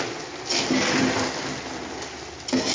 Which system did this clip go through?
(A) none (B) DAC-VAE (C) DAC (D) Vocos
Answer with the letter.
A